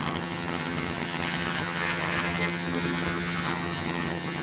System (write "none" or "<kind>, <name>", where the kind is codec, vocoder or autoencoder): vocoder, HiFi-GAN